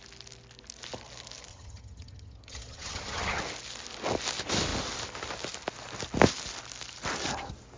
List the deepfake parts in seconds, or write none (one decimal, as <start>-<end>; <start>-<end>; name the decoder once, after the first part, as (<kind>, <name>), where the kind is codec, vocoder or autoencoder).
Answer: 1.5-3.4 (vocoder, HiFi-GAN)